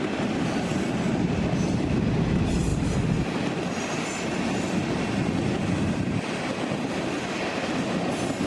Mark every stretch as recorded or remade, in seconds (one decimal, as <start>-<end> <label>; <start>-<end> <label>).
0.0-8.5 recorded